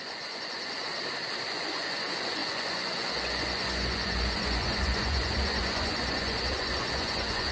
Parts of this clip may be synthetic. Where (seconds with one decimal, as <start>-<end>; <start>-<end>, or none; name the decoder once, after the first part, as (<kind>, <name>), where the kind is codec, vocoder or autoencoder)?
0.0-0.9 (vocoder, Vocos); 1.5-7.5